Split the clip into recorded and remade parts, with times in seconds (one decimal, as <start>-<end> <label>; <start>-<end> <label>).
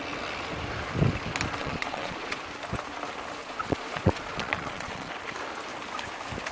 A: 0.0-1.6 recorded; 1.6-2.4 remade; 2.4-3.4 recorded; 3.4-5.1 remade; 5.1-6.5 recorded